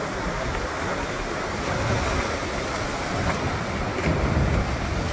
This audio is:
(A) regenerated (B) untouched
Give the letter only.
B